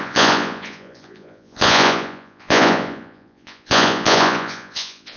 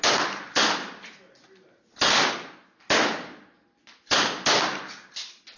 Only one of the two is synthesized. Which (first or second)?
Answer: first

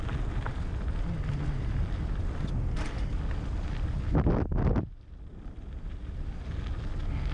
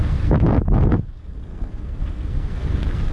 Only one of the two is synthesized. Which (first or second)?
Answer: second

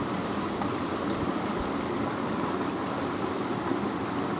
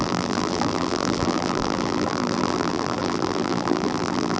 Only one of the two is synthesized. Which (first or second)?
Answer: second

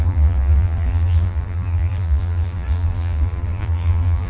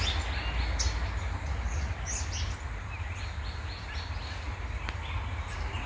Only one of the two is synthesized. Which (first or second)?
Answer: first